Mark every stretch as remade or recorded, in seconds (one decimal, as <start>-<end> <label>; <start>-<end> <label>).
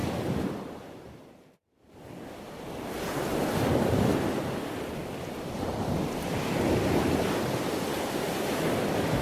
0.0-9.2 recorded